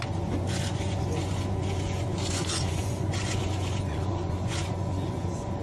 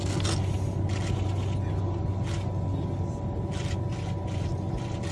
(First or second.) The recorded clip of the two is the second